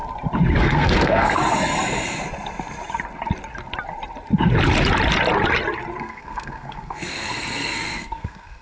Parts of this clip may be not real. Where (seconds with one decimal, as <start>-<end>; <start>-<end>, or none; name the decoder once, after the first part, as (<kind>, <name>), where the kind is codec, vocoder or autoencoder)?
0.6-1.4 (codec, SNAC); 6.0-8.6